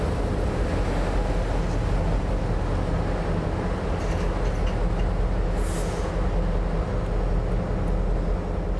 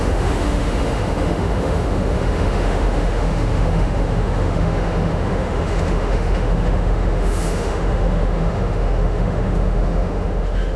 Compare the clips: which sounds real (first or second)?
first